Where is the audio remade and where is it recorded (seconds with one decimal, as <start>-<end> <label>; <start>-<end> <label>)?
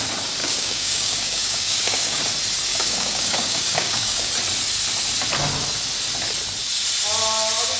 0.0-0.4 recorded; 0.4-2.2 remade; 2.2-2.7 recorded; 2.7-4.3 remade; 4.3-7.8 recorded